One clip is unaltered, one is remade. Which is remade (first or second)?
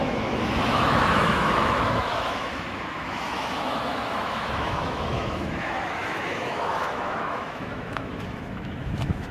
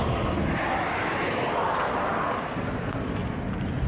first